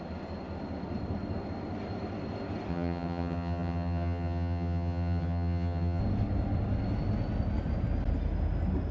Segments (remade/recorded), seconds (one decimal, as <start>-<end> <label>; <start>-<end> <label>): 0.0-2.7 recorded; 2.7-6.0 remade; 6.0-8.9 recorded